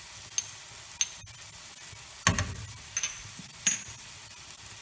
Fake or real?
real